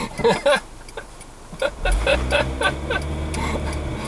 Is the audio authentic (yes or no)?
yes